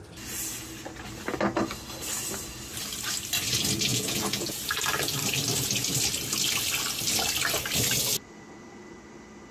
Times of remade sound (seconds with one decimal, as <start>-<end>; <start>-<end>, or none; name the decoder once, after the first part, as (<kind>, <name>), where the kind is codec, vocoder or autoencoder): 3.9-4.6 (vocoder, Vocos)